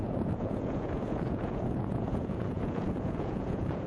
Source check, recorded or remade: remade